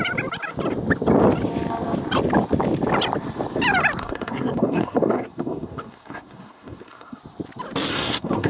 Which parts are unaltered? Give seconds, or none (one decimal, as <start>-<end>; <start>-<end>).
0.0-4.0; 7.2-7.9